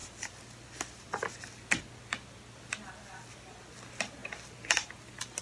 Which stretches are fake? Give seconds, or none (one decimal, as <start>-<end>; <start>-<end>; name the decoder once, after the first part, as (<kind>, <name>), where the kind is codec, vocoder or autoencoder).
none